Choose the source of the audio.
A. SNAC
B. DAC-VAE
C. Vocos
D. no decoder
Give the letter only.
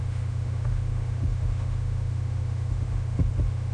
B